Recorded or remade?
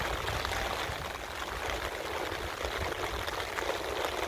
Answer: recorded